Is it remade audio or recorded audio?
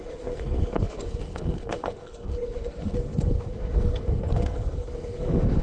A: remade